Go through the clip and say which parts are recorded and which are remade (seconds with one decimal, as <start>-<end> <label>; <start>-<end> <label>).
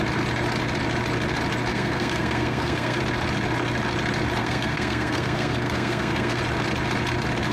0.0-1.7 recorded; 1.7-3.0 remade; 3.0-4.4 recorded; 4.4-6.4 remade; 6.4-7.5 recorded